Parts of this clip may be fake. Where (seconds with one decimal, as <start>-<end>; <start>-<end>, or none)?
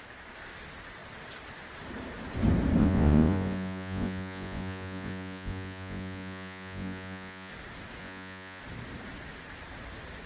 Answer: 2.8-7.5; 8.0-8.6